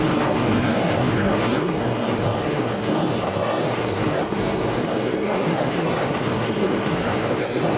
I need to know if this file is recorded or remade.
remade